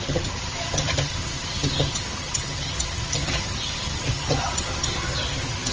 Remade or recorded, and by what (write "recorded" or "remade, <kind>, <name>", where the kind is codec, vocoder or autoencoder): remade, vocoder, HiFi-GAN